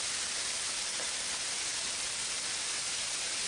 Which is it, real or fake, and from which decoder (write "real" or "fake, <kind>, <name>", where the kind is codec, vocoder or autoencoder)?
real